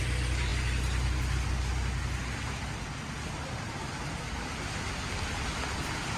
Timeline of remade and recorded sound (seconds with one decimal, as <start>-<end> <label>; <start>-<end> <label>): 0.0-6.2 recorded